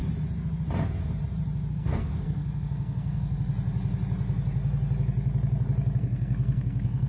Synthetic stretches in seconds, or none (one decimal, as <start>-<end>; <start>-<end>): 1.7-3.5; 6.0-7.1